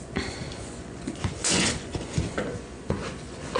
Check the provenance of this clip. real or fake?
fake